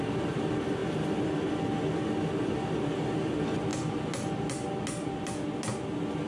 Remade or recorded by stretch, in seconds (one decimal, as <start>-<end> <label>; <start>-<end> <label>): 0.0-6.3 recorded